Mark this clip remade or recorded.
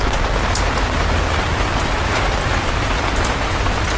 remade